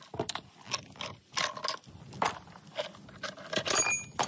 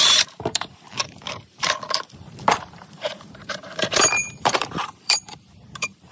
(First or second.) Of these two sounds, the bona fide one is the first